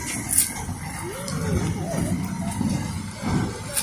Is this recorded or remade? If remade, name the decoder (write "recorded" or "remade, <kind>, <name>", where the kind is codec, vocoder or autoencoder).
recorded